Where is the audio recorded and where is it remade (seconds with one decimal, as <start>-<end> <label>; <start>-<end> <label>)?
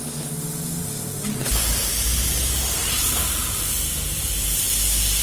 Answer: 0.0-5.2 recorded